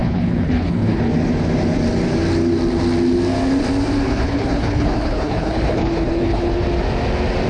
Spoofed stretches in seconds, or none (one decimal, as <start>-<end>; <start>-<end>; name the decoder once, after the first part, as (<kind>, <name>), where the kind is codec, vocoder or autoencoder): 0.0-1.0 (codec, HILCodec); 4.1-6.5